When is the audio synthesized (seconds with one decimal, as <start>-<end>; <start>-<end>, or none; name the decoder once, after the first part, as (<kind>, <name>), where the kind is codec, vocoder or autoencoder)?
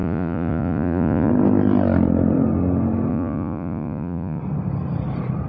0.0-1.3 (vocoder, Vocos); 3.1-4.4